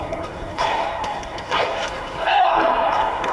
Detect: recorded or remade remade